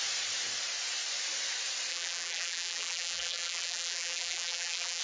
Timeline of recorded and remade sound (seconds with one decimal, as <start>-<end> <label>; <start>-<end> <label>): 0.0-1.9 recorded; 1.9-5.0 remade